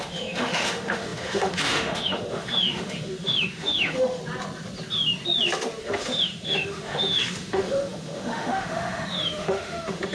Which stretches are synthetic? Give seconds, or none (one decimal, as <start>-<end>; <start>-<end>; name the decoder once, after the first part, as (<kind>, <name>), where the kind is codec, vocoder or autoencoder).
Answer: 0.0-4.2 (autoencoder, DAC-VAE); 5.8-10.1

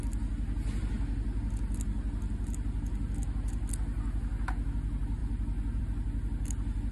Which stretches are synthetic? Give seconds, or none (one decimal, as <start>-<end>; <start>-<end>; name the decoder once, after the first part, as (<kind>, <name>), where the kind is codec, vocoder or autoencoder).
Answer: none

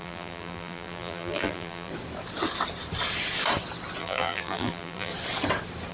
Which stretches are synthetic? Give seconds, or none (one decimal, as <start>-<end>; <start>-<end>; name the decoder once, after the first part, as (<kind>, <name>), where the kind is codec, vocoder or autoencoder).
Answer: 0.0-1.9 (vocoder, BigVGAN v2); 4.0-5.1